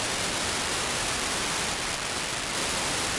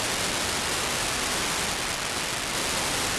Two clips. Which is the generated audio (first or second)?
first